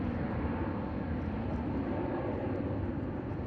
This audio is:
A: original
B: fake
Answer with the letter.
A